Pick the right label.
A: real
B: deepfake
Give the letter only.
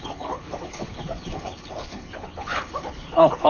B